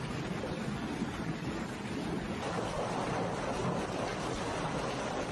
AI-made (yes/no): no